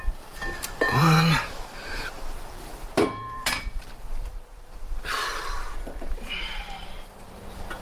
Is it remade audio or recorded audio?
remade